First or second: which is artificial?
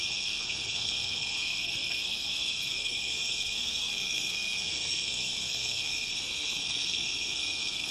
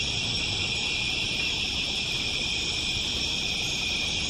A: first